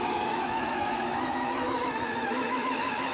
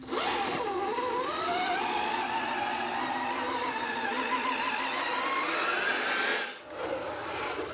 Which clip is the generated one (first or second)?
first